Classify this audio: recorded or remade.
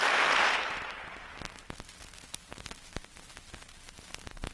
recorded